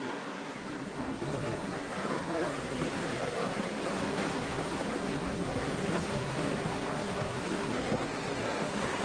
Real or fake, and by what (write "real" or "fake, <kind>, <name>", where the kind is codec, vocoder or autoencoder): fake, codec, SNAC